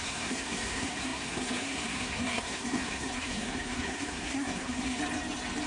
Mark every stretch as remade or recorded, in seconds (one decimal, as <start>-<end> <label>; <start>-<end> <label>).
0.0-5.0 remade; 5.0-5.7 recorded